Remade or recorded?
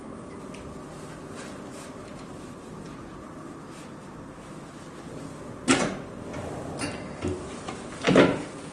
recorded